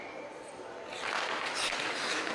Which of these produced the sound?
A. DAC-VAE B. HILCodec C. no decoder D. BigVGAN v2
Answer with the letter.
C